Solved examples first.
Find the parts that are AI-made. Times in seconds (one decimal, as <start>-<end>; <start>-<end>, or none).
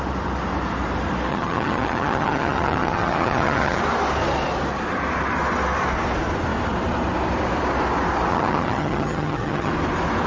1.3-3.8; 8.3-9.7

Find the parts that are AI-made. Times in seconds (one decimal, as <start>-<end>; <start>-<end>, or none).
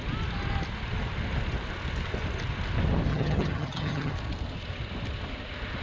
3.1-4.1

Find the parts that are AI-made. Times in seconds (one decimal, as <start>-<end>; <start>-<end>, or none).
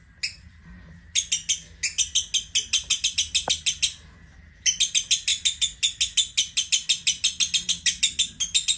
none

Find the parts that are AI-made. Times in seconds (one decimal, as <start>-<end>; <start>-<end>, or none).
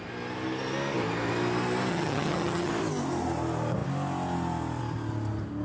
1.9-2.7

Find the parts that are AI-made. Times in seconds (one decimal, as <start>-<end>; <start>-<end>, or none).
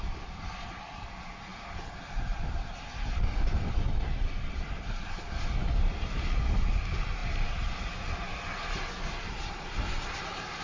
none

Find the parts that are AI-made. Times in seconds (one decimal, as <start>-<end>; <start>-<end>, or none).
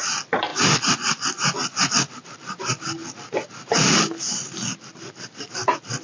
none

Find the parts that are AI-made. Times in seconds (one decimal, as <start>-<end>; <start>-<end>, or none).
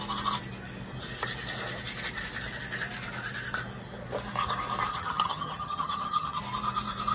4.9-6.4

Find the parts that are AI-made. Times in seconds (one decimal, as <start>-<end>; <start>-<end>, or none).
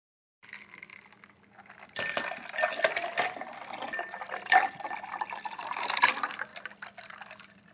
none